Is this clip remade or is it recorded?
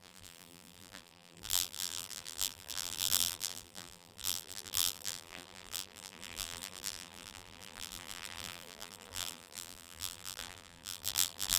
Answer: remade